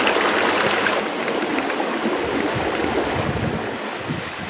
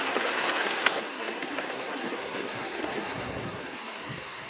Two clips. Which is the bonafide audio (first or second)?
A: first